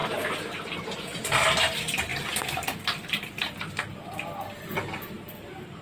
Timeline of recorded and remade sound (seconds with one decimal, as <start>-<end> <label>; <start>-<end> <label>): 0.0-5.8 recorded

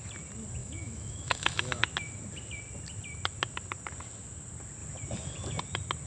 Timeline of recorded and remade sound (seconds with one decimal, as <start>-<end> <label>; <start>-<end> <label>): 0.0-0.6 recorded; 0.6-1.8 remade; 1.8-6.1 recorded

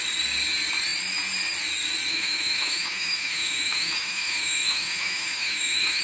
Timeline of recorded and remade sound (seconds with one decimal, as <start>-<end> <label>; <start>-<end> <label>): 0.0-2.1 recorded; 2.1-6.0 remade

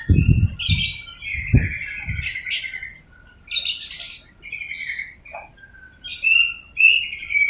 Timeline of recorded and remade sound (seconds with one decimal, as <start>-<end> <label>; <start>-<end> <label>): 0.0-7.5 recorded

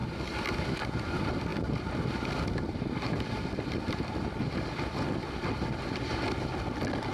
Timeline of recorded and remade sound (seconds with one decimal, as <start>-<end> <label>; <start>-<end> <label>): 0.0-7.1 recorded